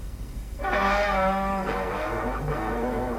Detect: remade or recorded remade